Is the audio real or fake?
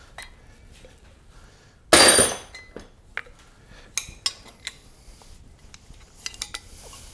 real